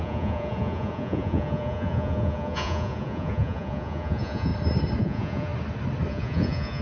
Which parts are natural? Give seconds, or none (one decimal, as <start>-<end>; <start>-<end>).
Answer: 4.5-5.0; 5.5-6.1